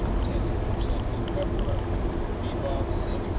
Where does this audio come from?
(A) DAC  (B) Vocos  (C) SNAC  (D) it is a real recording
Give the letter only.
D